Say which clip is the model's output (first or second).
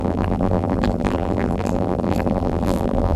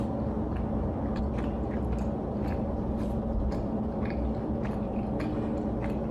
first